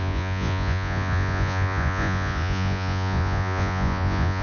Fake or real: fake